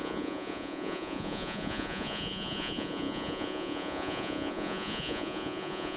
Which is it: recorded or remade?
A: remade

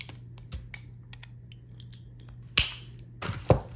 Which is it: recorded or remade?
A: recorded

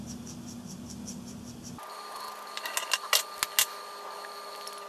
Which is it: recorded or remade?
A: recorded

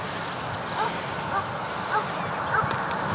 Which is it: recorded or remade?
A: recorded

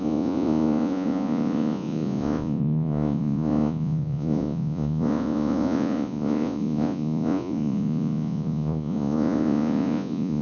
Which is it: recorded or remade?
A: remade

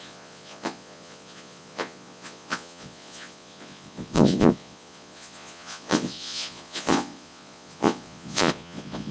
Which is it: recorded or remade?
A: remade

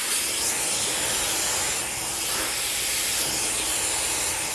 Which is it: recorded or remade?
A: recorded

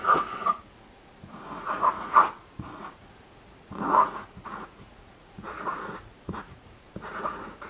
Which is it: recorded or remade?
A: remade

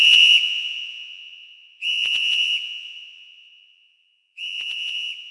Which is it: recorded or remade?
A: remade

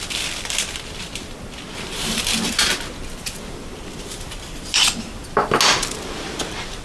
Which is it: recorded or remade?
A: recorded